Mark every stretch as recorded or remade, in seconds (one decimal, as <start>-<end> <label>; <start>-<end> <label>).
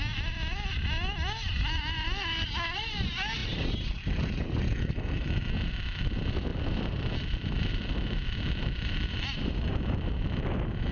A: 0.0-6.5 recorded; 6.5-9.7 remade; 9.7-10.9 recorded